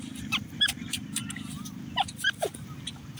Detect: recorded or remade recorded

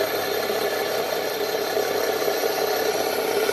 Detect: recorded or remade recorded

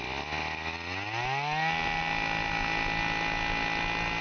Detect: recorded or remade recorded